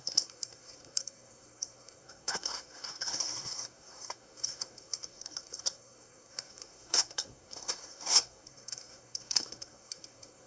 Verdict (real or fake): fake